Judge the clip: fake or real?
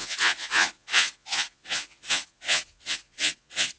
fake